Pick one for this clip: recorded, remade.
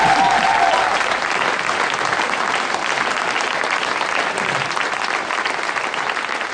recorded